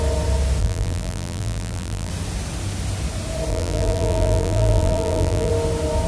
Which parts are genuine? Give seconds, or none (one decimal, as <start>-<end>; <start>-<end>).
0.0-0.6; 2.1-3.5; 5.5-6.1